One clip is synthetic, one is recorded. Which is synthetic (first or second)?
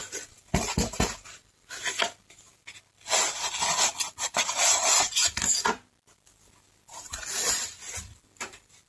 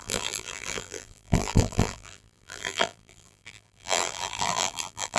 second